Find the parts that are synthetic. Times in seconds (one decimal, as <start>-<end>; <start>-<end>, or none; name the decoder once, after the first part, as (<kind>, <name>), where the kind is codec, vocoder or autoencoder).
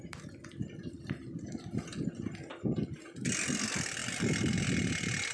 none